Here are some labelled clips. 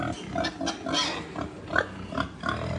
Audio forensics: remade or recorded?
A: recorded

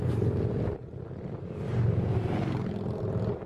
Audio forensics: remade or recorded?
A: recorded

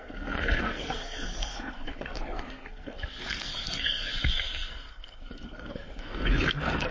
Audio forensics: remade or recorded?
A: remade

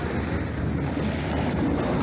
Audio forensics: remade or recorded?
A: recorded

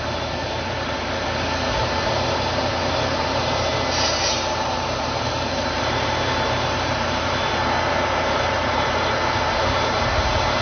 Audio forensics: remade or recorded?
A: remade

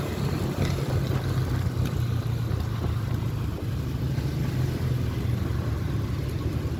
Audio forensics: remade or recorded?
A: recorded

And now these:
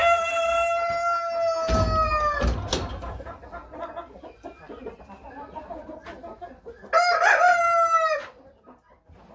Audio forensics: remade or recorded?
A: recorded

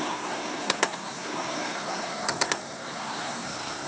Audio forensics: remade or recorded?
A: remade